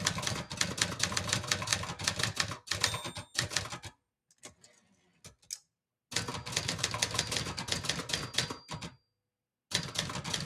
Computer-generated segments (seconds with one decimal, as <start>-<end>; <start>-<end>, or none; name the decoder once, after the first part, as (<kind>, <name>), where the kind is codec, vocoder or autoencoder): none